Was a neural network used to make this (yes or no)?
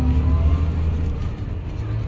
no